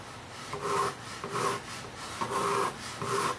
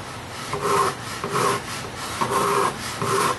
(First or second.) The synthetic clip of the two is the second